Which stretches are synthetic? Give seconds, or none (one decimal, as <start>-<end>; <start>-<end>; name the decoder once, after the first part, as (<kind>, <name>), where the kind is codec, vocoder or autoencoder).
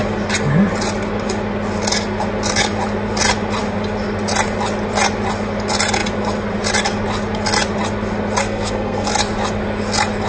8.4-9.1 (codec, SNAC)